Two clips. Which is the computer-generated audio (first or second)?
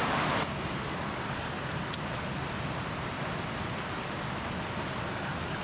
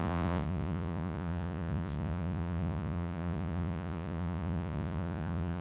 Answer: second